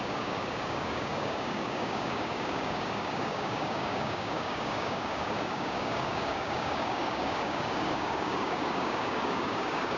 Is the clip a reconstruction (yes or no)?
yes